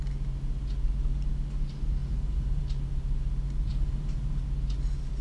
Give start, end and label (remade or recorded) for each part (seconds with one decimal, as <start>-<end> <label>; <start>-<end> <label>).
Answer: 0.0-2.0 recorded; 2.0-2.6 remade; 2.6-3.7 recorded; 3.7-4.4 remade; 4.4-5.2 recorded